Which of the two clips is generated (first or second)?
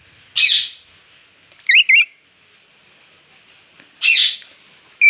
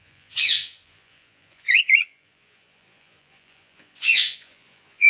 second